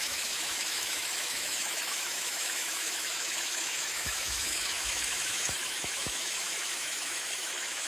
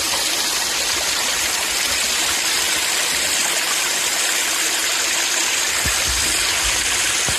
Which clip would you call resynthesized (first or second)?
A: first